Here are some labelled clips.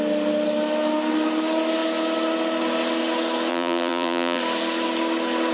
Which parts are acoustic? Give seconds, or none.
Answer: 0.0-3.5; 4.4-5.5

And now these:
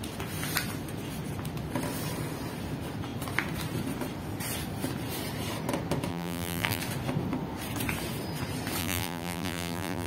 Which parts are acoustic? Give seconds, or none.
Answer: 0.0-6.1; 6.8-8.8